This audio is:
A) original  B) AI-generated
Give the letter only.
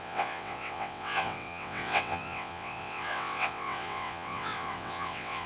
B